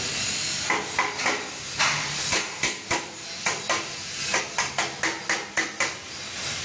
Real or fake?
real